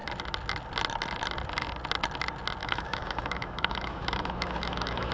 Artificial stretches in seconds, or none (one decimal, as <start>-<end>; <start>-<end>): 2.6-5.1